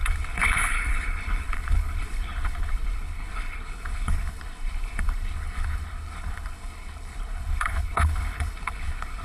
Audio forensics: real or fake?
fake